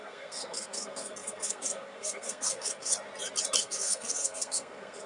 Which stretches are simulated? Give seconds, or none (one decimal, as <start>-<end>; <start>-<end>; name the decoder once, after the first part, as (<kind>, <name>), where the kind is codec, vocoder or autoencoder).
0.0-2.9 (codec, SNAC); 3.6-5.1